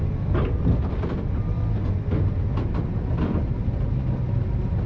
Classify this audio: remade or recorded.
recorded